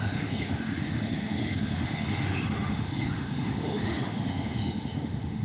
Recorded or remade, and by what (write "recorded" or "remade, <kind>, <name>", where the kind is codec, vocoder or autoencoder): remade, autoencoder, DAC-VAE